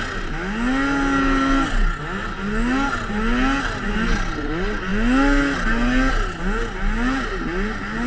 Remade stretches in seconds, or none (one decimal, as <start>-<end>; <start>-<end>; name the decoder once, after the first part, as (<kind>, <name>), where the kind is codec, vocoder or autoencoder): none